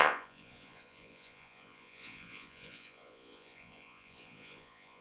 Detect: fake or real fake